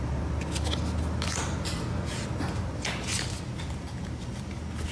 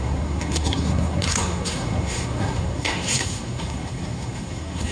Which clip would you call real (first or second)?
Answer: first